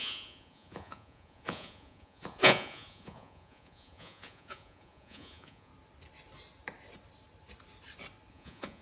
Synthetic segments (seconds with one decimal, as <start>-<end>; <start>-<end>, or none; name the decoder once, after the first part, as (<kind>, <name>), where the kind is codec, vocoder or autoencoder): 0.0-5.7 (vocoder, Vocos); 8.3-8.8

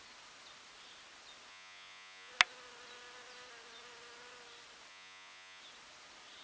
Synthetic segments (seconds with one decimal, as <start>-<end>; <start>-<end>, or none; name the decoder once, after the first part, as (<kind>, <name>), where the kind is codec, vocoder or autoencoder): 1.5-2.3 (vocoder, Vocos); 4.9-5.6

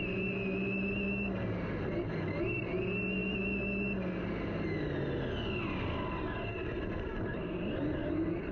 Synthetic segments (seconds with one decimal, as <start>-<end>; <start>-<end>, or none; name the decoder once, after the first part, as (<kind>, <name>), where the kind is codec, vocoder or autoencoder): none

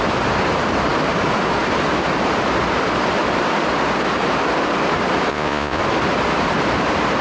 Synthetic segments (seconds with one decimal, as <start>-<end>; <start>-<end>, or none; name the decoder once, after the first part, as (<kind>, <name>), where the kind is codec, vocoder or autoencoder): 5.3-5.8 (vocoder, Vocos)

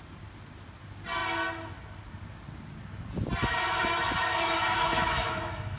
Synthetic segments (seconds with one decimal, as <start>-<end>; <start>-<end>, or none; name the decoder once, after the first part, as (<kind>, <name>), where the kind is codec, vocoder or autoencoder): 3.4-5.8 (autoencoder, DAC-VAE)

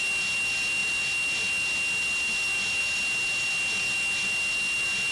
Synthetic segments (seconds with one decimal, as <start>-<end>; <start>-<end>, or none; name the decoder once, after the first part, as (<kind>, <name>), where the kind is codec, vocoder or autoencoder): none